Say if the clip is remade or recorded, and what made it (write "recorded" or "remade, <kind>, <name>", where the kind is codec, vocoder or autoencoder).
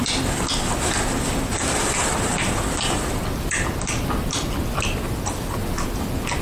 recorded